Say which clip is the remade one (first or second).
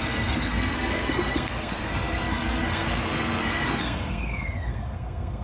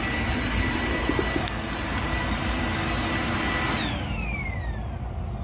first